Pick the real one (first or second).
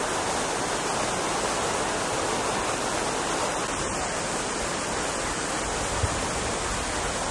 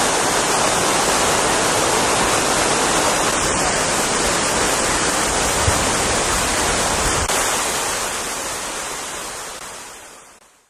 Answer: first